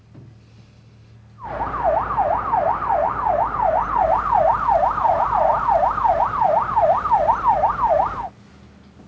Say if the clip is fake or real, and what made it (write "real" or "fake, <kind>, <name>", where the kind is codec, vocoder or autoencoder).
real